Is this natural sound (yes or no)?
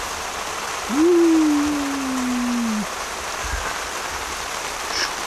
yes